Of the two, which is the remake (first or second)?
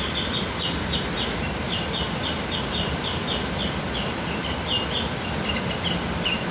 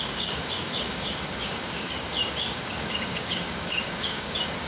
second